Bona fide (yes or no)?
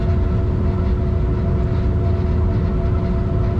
yes